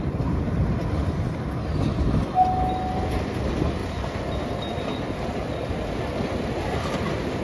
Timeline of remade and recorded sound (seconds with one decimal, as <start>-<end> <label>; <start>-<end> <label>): 0.0-7.4 recorded

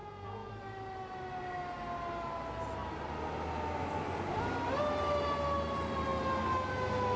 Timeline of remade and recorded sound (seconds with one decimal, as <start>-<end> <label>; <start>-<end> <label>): 0.0-0.5 remade; 0.5-7.2 recorded